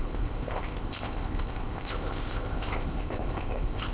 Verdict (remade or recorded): remade